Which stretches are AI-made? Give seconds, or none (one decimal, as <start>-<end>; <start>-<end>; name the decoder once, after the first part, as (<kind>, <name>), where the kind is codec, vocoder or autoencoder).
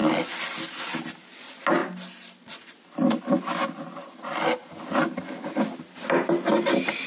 4.6-5.2 (vocoder, BigVGAN v2)